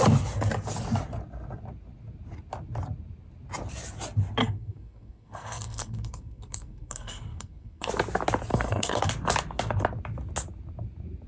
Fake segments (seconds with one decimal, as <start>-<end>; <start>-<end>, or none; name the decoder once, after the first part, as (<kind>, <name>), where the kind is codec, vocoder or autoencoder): 4.4-7.9 (codec, SNAC); 8.5-9.1

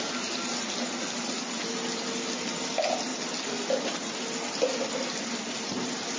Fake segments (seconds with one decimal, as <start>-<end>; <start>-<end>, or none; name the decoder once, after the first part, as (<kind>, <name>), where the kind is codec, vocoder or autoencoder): none

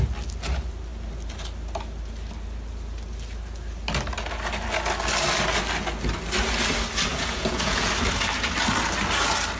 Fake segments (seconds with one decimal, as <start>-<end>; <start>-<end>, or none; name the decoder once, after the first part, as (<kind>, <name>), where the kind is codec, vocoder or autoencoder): 7.1-7.9 (vocoder, Vocos)